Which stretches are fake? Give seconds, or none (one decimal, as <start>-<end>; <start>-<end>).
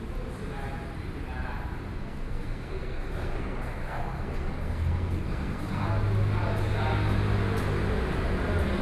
2.0-5.9